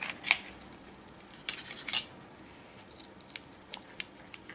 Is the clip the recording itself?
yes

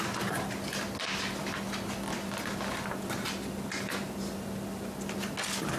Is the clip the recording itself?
yes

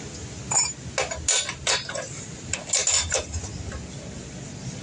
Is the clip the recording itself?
yes